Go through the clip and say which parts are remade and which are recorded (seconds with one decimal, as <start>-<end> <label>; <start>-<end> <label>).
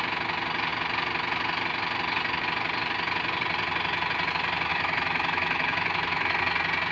0.0-4.7 recorded; 4.7-6.4 remade; 6.4-6.9 recorded